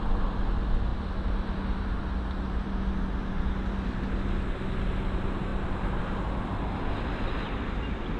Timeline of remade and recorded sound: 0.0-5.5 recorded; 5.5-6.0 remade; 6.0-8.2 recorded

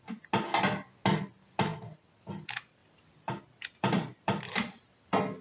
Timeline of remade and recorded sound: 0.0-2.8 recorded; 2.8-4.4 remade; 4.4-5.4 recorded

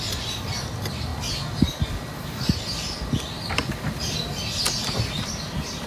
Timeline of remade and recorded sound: 0.0-1.1 remade; 1.1-4.6 recorded; 4.6-5.9 remade

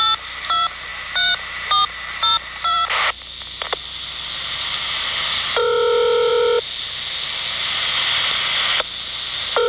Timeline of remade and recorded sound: 0.0-9.7 recorded